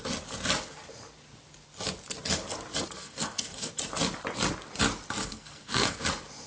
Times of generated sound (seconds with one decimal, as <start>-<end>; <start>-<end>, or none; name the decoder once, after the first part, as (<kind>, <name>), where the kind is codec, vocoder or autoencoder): 3.0-3.7 (codec, SNAC); 5.2-6.0